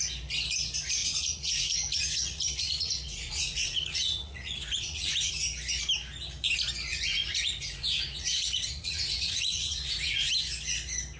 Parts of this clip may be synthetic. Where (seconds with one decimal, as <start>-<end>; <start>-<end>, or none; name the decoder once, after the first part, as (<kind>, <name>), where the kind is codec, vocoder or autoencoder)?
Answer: 1.0-5.3 (vocoder, Vocos); 6.9-10.3